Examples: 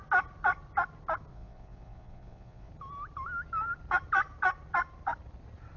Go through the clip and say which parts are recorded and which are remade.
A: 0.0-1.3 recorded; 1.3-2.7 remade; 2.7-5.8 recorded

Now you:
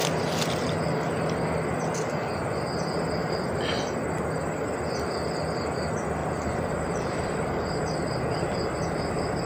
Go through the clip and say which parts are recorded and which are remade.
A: 0.0-3.2 recorded; 3.2-3.9 remade; 3.9-6.2 recorded; 6.2-7.1 remade; 7.1-9.5 recorded

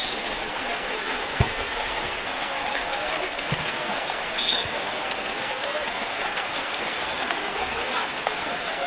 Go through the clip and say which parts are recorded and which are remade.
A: 0.0-8.9 remade